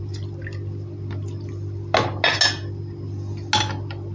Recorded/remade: recorded